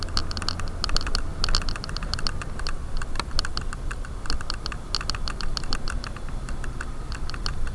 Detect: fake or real real